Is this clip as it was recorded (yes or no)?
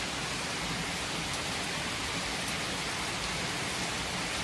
yes